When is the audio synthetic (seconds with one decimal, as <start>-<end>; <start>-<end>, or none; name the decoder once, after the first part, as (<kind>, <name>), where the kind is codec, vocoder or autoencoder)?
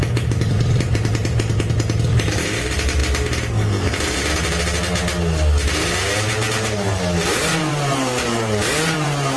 0.0-1.2 (vocoder, BigVGAN v2); 2.6-3.0; 6.5-9.4